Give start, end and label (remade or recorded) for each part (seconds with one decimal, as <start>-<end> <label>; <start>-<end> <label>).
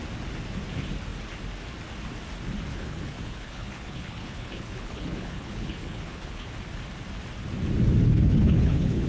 0.0-2.7 recorded; 2.7-6.5 remade; 6.5-8.0 recorded; 8.0-9.1 remade